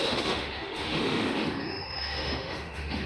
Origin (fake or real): fake